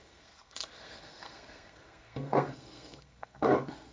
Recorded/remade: remade